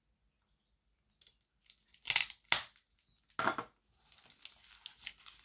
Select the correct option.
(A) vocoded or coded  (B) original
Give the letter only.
B